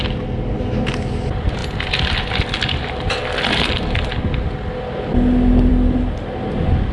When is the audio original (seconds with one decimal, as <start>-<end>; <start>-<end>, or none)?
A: 0.0-6.9